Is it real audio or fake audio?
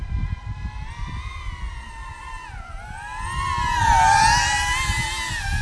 real